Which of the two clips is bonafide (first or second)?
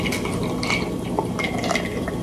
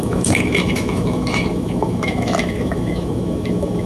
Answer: first